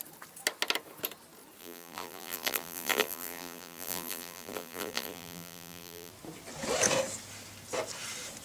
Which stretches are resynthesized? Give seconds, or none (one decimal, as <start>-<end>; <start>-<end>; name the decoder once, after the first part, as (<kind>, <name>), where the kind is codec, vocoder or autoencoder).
1.6-6.1 (vocoder, BigVGAN v2)